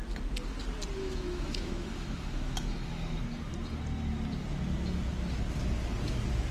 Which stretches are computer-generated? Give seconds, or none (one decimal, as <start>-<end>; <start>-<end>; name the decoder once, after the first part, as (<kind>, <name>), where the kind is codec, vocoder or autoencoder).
1.0-3.2 (autoencoder, DAC-VAE)